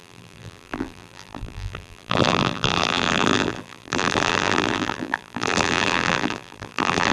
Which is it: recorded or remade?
remade